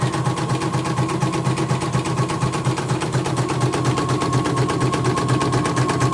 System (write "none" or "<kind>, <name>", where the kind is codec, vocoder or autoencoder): none